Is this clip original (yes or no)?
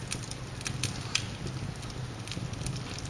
yes